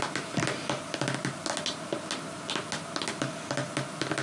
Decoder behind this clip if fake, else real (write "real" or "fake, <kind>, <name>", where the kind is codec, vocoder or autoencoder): real